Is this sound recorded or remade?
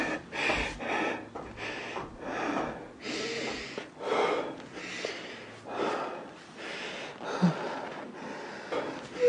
recorded